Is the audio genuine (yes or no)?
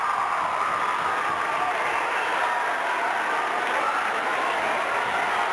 yes